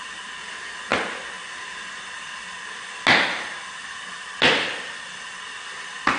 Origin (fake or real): real